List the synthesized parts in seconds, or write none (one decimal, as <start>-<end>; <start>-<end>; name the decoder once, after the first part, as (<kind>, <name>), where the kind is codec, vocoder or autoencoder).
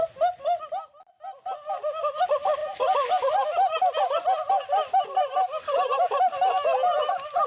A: none